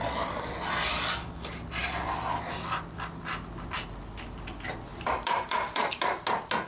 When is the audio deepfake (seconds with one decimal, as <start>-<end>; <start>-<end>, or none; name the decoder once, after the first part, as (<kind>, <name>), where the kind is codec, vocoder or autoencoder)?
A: 4.9-5.9 (vocoder, BigVGAN v2)